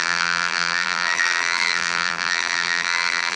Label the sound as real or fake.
fake